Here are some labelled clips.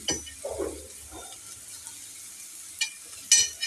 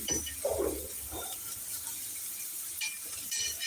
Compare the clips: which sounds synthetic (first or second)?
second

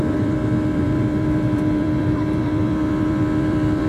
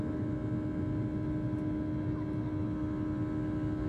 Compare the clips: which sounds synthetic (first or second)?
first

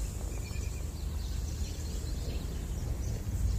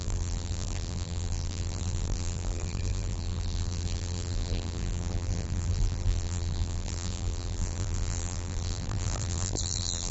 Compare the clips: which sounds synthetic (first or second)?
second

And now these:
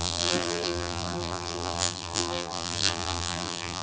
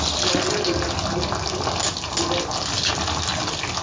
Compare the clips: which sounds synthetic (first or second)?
first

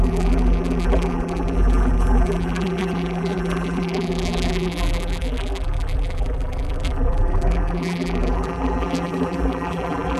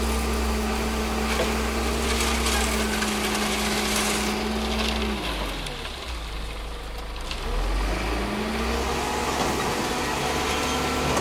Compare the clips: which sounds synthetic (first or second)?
first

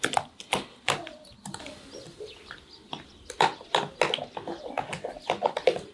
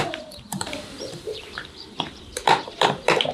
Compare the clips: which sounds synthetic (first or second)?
second